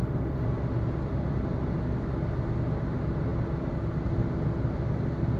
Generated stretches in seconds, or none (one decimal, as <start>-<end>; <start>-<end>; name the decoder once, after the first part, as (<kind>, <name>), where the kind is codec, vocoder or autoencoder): none